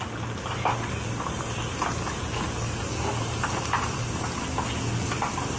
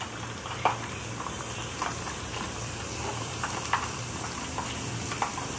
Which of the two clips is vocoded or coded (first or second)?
second